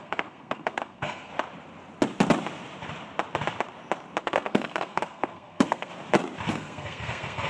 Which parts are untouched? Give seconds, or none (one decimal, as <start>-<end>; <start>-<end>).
1.3-4.2; 5.9-6.5